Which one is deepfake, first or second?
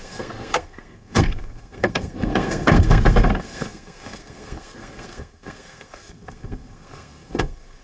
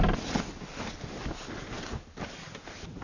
first